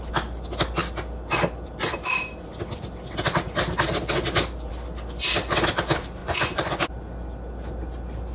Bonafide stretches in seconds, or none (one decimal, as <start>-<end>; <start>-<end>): 0.0-6.2; 6.8-8.3